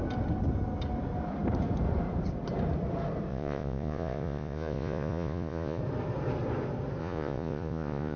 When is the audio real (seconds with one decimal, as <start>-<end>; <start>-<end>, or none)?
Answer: 0.0-3.3; 5.8-7.0